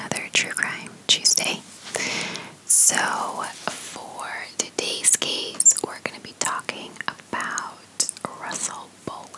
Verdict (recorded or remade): recorded